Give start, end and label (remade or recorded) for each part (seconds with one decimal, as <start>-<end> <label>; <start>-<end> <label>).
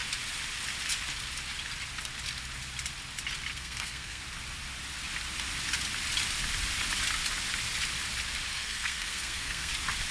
0.0-3.5 recorded; 3.5-4.2 remade; 4.2-8.5 recorded; 8.5-9.7 remade; 9.7-10.1 recorded